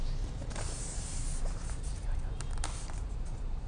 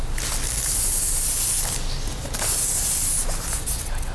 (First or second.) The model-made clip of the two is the first